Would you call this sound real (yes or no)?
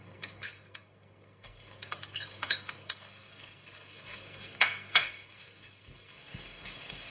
no